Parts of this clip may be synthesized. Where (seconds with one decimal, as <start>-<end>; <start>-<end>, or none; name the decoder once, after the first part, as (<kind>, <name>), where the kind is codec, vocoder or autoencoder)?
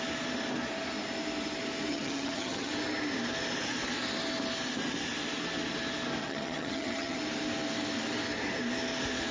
1.9-2.7 (vocoder, HiFi-GAN); 6.2-7.2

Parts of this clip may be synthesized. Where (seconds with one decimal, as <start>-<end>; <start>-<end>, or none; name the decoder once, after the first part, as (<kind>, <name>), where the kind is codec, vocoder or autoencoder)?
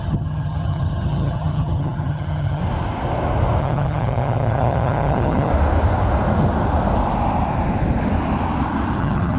0.0-2.6 (vocoder, HiFi-GAN); 3.6-5.5; 9.0-9.4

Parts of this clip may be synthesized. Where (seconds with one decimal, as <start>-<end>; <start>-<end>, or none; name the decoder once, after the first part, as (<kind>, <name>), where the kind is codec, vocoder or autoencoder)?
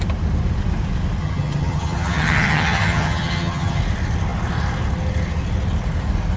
1.2-3.8 (vocoder, HiFi-GAN)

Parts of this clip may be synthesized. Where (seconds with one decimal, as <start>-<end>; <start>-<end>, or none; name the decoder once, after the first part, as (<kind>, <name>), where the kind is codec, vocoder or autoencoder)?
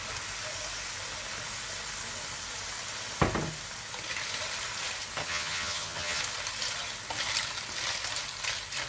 5.2-6.2 (vocoder, HiFi-GAN)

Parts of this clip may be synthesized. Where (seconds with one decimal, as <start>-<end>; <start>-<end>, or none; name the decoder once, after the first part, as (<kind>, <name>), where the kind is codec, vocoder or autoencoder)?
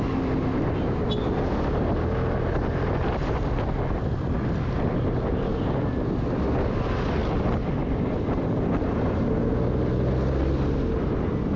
none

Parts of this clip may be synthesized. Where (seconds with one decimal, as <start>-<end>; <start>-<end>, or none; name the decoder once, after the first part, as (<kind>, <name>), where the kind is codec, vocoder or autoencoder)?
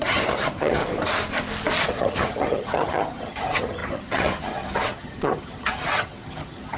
0.0-0.8 (vocoder, HiFi-GAN); 1.9-6.8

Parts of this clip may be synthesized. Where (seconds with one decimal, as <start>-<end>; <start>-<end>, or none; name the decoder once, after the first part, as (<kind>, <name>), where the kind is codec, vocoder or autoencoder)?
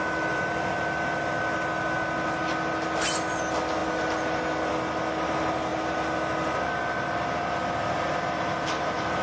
none